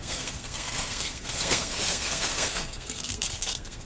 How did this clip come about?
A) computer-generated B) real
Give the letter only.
A